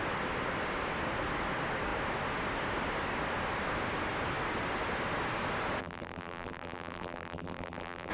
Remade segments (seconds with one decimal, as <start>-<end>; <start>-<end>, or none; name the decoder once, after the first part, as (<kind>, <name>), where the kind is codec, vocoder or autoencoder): 5.8-8.1 (vocoder, BigVGAN v2)